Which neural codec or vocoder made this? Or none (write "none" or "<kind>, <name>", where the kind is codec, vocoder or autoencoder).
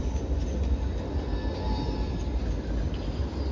none